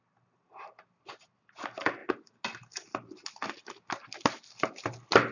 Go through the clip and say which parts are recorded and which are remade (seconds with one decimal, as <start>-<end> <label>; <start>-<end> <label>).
0.0-5.3 recorded